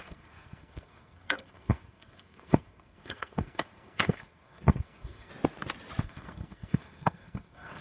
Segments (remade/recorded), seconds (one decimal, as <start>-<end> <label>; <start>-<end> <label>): 0.0-5.3 remade; 5.3-6.0 recorded; 6.0-7.8 remade